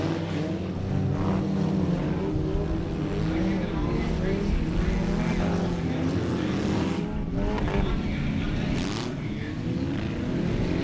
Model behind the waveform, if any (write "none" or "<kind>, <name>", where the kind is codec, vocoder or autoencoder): none